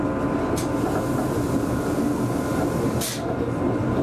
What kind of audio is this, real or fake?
real